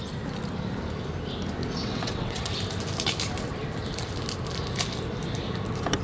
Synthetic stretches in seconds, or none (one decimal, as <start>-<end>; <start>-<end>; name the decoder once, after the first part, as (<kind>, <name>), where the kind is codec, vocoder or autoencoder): 1.8-2.5 (vocoder, WaveNeXt)